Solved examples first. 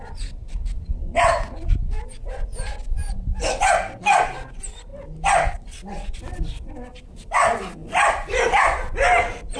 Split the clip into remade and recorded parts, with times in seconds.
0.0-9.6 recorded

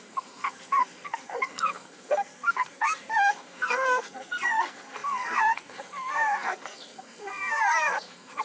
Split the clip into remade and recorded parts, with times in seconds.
0.0-8.4 remade

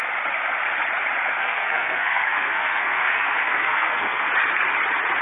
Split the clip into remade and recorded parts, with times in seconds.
0.0-1.4 recorded; 1.4-4.3 remade; 4.3-5.2 recorded